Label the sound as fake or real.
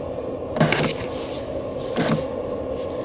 real